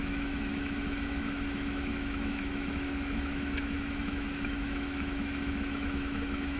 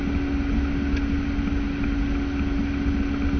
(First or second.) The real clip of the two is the second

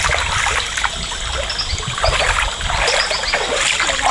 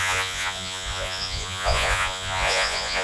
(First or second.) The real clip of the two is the first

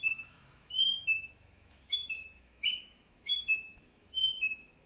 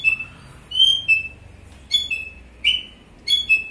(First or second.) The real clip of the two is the second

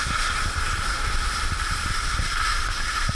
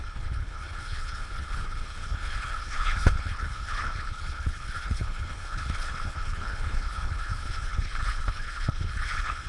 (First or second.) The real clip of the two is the first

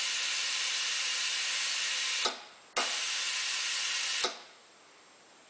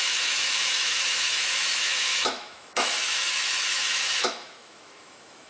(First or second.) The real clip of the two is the first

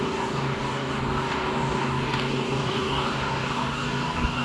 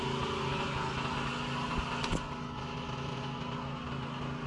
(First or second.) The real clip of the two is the second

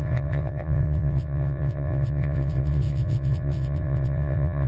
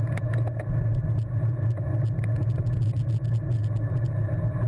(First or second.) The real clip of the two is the second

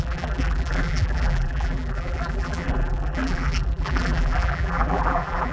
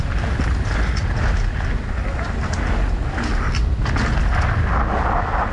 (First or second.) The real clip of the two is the second